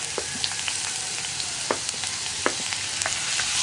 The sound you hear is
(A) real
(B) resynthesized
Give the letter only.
A